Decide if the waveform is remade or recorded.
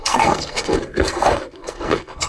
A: remade